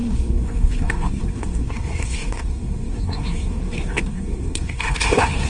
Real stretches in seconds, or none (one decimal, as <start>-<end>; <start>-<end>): none